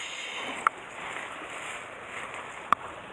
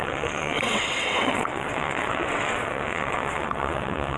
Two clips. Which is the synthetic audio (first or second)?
second